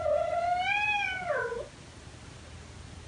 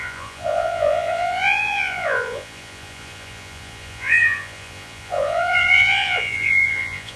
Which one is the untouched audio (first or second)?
first